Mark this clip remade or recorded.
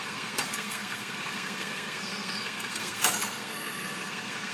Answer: remade